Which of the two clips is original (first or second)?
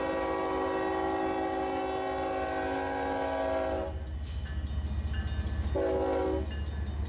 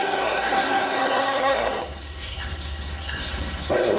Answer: first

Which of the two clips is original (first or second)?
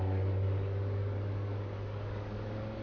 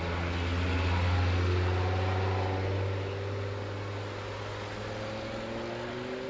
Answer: second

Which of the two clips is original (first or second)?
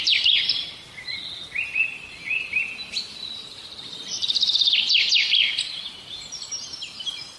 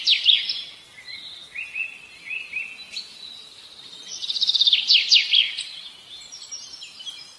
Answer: second